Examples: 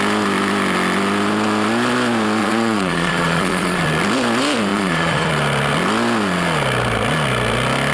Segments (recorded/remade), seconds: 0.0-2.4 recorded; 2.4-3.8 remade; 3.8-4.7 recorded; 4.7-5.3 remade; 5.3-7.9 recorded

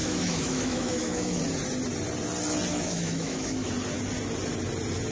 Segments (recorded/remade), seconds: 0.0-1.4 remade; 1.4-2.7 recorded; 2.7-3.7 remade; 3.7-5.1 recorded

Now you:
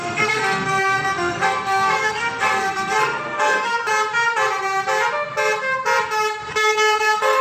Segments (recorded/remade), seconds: 0.0-3.9 remade; 3.9-6.5 recorded; 6.5-7.4 remade